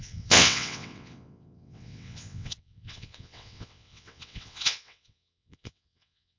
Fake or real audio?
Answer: fake